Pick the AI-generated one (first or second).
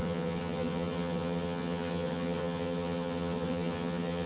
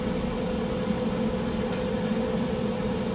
first